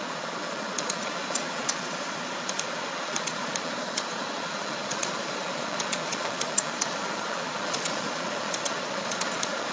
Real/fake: fake